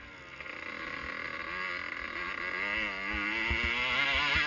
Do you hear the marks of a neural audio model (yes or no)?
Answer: no